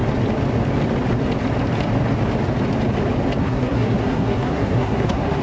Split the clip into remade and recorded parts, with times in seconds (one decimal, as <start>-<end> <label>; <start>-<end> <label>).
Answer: 0.0-3.4 recorded; 3.4-5.4 remade